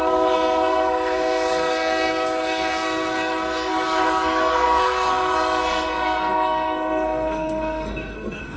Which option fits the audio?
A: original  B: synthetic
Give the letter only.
B